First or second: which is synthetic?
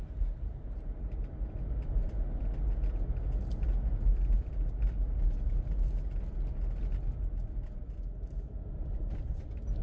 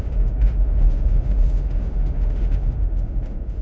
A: second